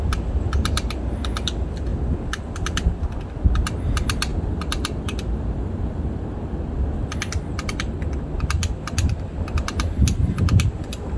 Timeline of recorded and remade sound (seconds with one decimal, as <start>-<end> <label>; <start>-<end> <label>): 0.0-4.3 recorded; 4.3-6.2 remade; 6.2-11.2 recorded